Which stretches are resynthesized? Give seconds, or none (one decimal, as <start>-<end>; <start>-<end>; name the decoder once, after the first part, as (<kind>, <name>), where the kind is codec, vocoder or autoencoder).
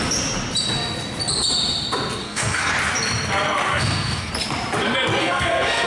2.2-2.7 (codec, SNAC); 3.7-4.3; 5.2-5.9